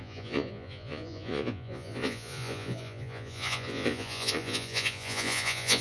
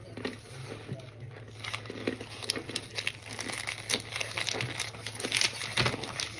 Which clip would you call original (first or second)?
second